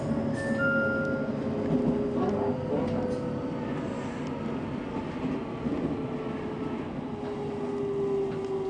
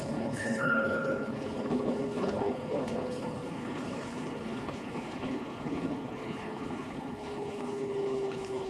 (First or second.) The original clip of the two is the first